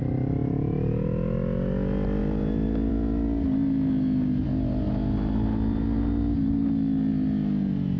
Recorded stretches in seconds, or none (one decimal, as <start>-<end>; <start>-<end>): 0.0-8.0